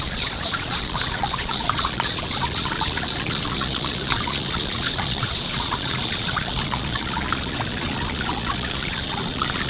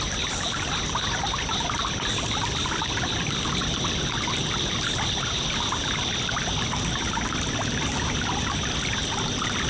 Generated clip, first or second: first